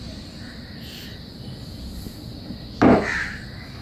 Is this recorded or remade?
recorded